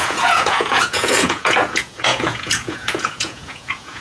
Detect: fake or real fake